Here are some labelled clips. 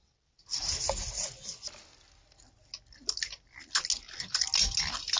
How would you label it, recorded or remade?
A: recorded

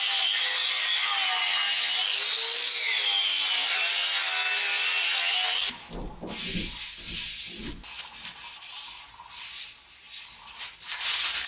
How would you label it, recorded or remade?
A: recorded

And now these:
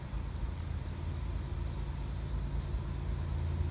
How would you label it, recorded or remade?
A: recorded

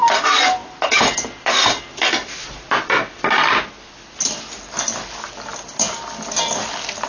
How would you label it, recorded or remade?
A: recorded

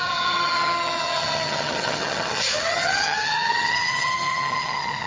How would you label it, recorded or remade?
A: remade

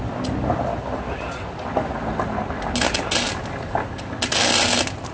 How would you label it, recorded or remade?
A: recorded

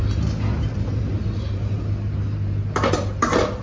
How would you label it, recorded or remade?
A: recorded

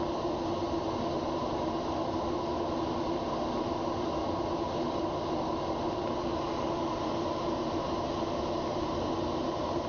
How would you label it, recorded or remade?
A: recorded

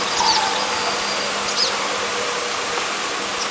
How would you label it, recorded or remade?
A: recorded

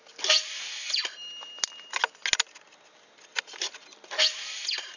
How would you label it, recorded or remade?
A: recorded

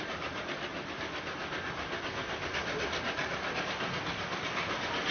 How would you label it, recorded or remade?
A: recorded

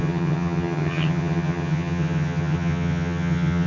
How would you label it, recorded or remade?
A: remade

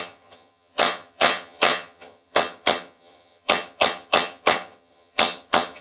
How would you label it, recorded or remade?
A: remade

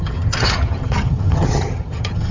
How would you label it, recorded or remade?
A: remade